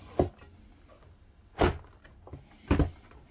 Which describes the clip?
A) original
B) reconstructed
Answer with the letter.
A